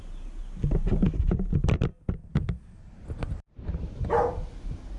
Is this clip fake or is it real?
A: real